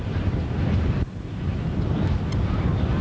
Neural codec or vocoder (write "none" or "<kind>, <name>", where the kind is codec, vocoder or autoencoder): vocoder, BigVGAN v2